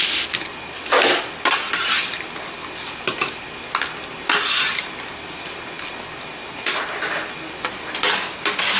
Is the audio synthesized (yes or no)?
no